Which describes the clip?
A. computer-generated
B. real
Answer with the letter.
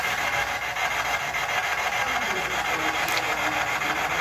B